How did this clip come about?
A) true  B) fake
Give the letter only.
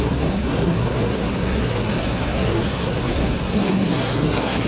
B